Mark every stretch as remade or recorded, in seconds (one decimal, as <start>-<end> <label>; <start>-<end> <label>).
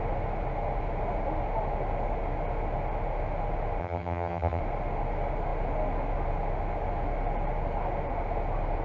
0.0-3.8 recorded; 3.8-4.6 remade; 4.6-8.8 recorded